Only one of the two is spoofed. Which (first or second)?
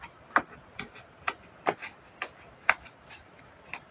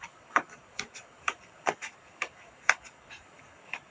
second